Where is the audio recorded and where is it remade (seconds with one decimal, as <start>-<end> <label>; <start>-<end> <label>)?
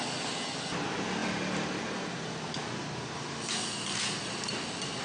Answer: 0.0-5.0 recorded